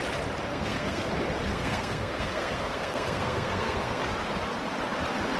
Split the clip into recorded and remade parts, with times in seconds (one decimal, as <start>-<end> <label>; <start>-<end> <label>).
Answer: 0.0-0.5 recorded; 0.5-1.1 remade; 1.1-1.5 recorded; 1.5-4.0 remade; 4.0-5.4 recorded